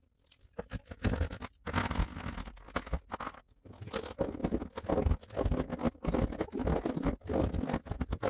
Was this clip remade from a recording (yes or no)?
no